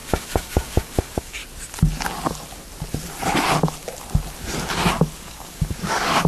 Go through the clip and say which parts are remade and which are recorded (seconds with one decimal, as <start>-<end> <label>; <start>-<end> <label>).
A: 0.0-1.4 remade; 1.4-5.2 recorded; 5.2-6.3 remade